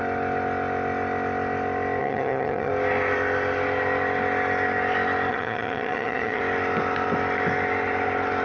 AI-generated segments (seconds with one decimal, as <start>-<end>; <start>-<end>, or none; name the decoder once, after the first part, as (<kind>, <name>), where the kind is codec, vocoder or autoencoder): 2.0-2.7 (vocoder, HiFi-GAN); 5.3-6.4